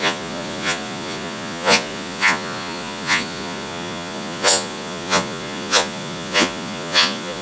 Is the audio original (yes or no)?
no